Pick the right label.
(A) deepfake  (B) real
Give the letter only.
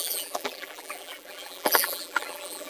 A